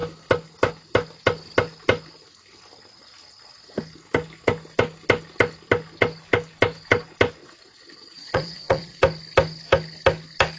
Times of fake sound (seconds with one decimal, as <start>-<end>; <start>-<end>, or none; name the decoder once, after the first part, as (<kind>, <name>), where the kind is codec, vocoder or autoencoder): 7.4-9.0 (vocoder, Vocos)